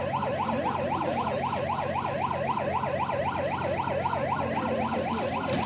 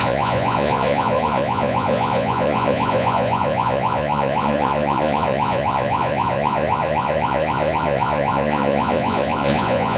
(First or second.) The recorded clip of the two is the first